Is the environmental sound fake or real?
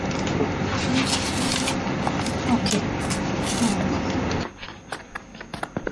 real